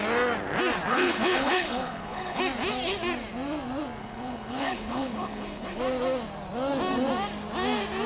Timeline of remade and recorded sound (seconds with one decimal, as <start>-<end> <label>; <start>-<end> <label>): 0.0-0.9 recorded; 0.9-2.4 remade; 2.4-4.0 recorded; 4.0-5.8 remade; 5.8-8.1 recorded